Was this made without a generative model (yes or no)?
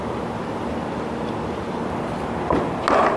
yes